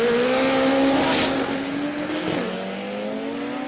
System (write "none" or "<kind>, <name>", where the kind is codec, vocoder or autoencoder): none